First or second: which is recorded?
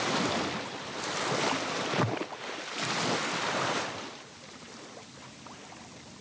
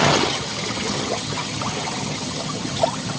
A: first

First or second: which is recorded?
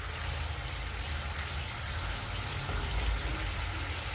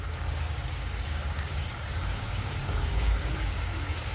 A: first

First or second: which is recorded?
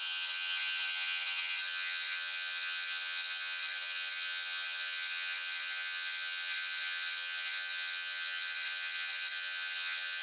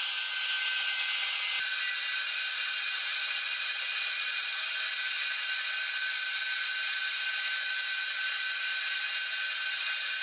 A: second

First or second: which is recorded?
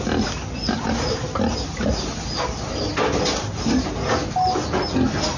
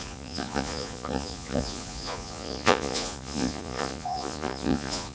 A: first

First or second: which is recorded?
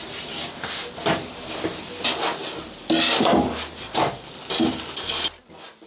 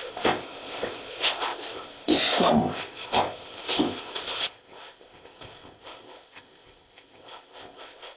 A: first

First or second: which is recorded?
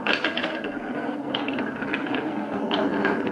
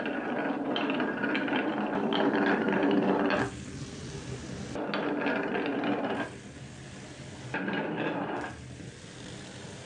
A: second